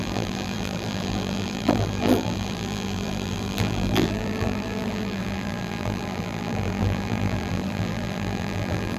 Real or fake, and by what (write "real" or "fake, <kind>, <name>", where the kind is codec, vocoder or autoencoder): fake, vocoder, BigVGAN v2